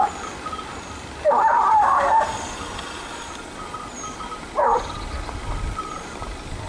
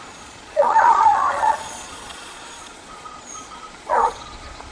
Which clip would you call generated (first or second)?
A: second